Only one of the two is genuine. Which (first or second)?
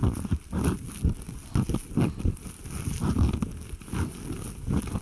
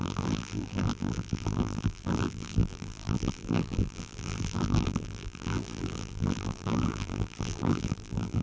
first